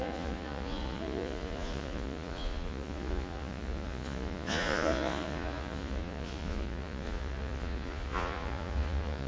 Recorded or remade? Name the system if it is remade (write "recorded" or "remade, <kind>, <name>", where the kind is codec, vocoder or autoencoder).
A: remade, vocoder, Vocos